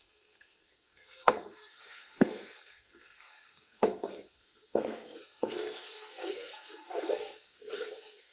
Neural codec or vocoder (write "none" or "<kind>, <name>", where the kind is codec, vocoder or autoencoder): codec, SNAC